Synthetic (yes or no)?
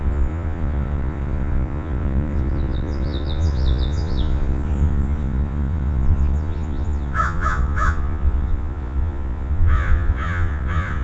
yes